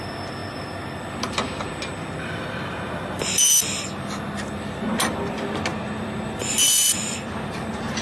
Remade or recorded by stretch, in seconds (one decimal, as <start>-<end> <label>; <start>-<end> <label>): 0.0-5.7 recorded; 5.7-6.4 remade; 6.4-8.0 recorded

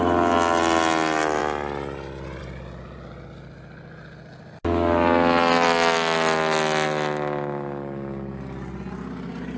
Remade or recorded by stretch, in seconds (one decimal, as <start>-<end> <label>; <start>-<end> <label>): 0.0-9.6 recorded